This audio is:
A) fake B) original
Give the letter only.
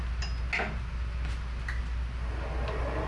B